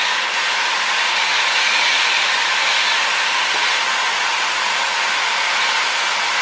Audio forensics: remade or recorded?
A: recorded